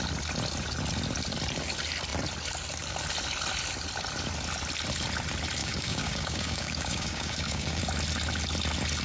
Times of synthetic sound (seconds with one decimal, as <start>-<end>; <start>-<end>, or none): 5.6-7.8